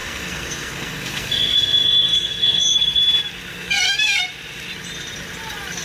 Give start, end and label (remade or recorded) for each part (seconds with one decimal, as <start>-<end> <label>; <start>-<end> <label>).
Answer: 0.0-3.0 remade; 3.0-3.5 recorded; 3.5-4.2 remade; 4.2-5.8 recorded